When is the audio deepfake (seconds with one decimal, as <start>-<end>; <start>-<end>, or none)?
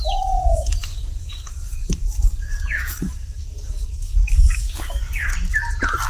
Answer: 0.0-5.3